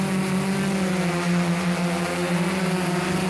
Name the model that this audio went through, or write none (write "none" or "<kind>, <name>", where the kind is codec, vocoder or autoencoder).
none